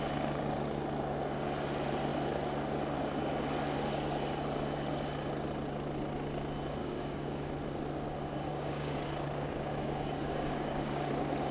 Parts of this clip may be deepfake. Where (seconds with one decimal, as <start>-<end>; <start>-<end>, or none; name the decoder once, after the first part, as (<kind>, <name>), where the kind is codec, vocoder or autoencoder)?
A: 6.8-7.5 (codec, DAC); 8.5-11.1